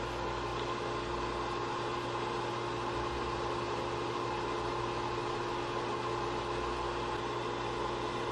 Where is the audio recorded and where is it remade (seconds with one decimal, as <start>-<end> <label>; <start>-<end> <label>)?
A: 0.0-8.3 recorded